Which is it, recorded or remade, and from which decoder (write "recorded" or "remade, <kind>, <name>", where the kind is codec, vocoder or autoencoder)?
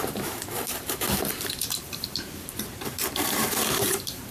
remade, vocoder, BigVGAN v2